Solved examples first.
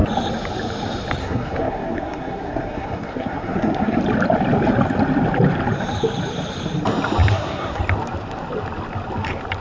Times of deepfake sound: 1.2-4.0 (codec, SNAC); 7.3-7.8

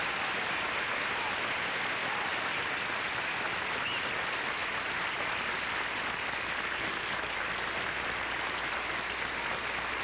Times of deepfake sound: 4.6-5.5 (vocoder, BigVGAN v2)

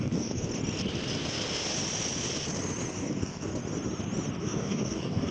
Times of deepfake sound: 0.0-0.5 (codec, DAC); 2.9-3.5; 4.4-5.3

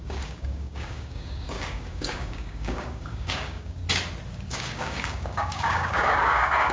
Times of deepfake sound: 0.0-3.8 (codec, DAC); 4.5-6.7

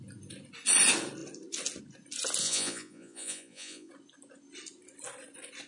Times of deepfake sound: 2.4-3.9 (vocoder, Vocos)